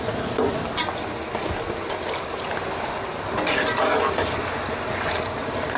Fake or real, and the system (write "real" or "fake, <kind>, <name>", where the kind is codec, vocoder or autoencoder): real